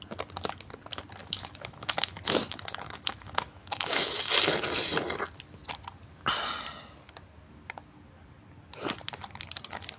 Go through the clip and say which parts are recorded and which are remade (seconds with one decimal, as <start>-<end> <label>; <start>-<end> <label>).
0.0-1.2 recorded; 1.2-4.2 remade; 4.2-10.0 recorded